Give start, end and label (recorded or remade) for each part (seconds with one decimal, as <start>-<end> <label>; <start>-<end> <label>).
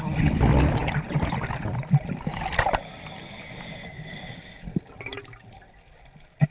0.0-6.5 recorded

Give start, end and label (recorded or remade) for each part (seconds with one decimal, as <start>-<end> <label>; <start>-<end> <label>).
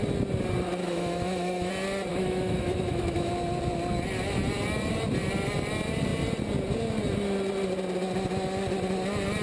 0.0-0.8 recorded; 0.8-1.7 remade; 1.7-2.1 recorded; 2.1-3.3 remade; 3.3-9.4 recorded